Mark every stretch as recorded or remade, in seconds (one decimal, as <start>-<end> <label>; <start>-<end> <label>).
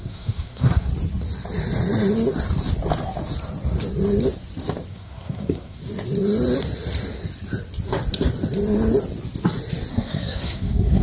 0.0-0.9 remade; 0.9-4.9 recorded; 4.9-5.8 remade; 5.8-9.9 recorded; 9.9-11.0 remade